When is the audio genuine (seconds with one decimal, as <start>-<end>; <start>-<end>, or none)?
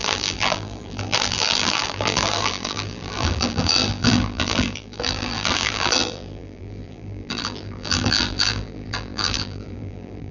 none